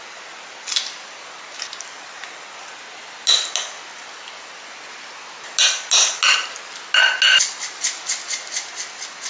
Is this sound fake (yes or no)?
no